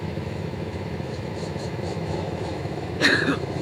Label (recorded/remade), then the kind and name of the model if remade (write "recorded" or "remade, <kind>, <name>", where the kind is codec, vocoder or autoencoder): remade, autoencoder, DAC-VAE